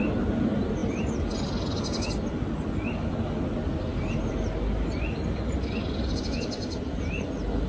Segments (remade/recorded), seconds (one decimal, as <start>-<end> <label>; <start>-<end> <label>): 0.0-7.7 recorded